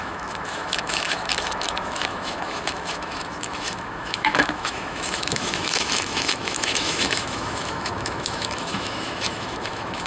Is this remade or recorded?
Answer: remade